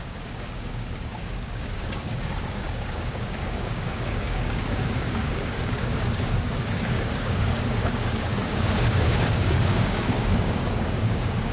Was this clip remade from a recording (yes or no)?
yes